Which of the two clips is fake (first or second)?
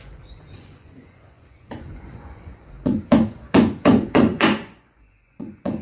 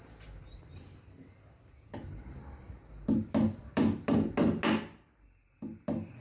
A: first